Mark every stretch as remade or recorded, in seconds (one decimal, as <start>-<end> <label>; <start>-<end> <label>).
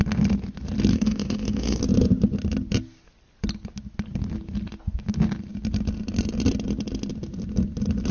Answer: 0.0-0.9 recorded; 0.9-1.8 remade; 1.8-8.1 recorded